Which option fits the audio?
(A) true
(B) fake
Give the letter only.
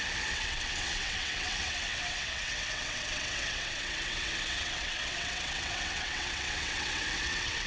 B